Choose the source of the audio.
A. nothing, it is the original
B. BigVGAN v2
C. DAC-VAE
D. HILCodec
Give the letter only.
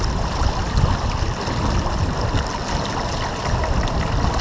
A